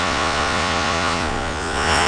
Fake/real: fake